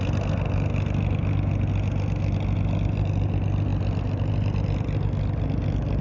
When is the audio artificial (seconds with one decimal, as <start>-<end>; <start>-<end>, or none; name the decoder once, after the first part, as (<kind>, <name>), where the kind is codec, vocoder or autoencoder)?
none